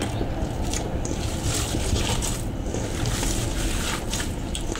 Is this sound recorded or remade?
recorded